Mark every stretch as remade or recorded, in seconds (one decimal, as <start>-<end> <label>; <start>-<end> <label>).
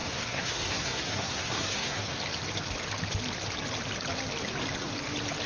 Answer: 0.0-2.2 remade; 2.2-5.5 recorded